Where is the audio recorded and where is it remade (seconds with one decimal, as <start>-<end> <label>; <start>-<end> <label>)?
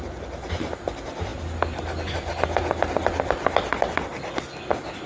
0.0-5.1 recorded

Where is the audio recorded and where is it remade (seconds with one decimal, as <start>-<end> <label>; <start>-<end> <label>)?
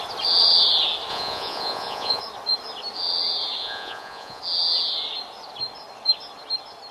0.0-1.1 recorded; 1.1-2.2 remade; 2.2-3.6 recorded; 3.6-4.4 remade; 4.4-6.9 recorded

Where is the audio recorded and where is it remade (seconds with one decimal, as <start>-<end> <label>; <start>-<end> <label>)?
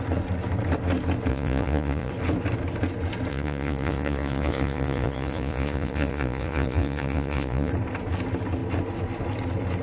0.0-1.3 recorded; 1.3-2.1 remade; 2.1-3.3 recorded; 3.3-7.7 remade; 7.7-9.8 recorded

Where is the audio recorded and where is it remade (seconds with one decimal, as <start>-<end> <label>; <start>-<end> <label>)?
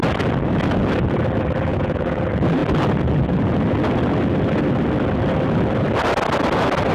0.0-1.7 recorded; 1.7-2.2 remade; 2.2-6.9 recorded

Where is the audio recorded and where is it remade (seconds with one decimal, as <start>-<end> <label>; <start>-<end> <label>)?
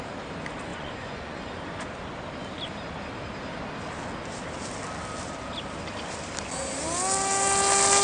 0.0-0.7 recorded; 0.7-1.6 remade; 1.6-8.0 recorded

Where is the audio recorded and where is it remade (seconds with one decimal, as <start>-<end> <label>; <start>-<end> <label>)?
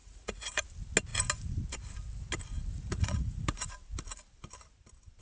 0.0-0.6 remade; 0.6-2.7 recorded; 2.7-3.7 remade; 3.7-5.2 recorded